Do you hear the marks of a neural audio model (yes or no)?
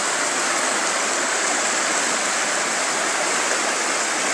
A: no